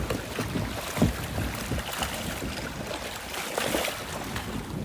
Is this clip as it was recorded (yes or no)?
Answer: yes